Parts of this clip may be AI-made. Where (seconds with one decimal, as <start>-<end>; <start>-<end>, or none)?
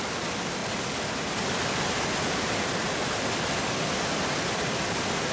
none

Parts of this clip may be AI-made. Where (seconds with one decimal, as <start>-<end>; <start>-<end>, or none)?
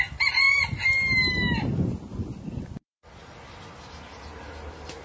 none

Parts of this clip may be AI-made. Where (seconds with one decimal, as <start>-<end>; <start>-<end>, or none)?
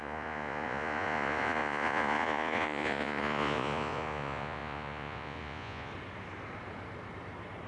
0.0-5.9